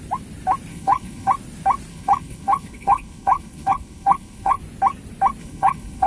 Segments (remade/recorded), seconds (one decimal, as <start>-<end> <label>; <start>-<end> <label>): 0.0-0.7 recorded; 0.7-1.3 remade; 1.3-1.9 recorded; 1.9-4.6 remade; 4.6-5.4 recorded; 5.4-6.1 remade